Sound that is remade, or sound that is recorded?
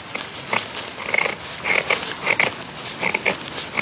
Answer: recorded